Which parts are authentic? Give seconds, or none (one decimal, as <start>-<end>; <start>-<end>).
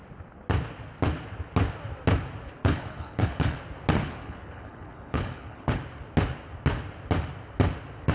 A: 0.0-2.6; 3.6-4.0; 5.8-8.1